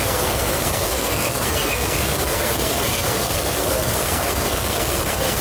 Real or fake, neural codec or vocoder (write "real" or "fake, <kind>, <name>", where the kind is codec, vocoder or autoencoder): fake, codec, SNAC